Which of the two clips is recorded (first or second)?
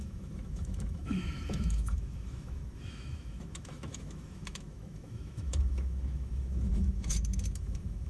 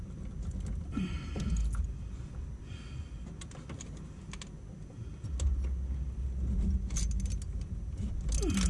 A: second